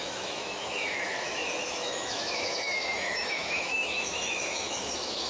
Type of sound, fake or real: fake